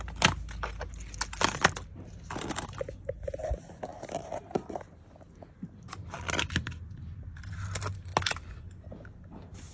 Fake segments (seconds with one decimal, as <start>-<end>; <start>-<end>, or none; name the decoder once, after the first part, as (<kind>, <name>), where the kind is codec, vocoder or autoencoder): none